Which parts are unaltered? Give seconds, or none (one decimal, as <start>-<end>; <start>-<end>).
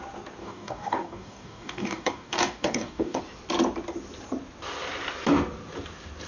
0.0-0.4; 3.2-6.3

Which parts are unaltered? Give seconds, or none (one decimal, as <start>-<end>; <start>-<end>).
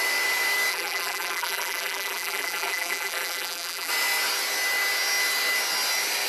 0.0-0.7; 3.9-6.3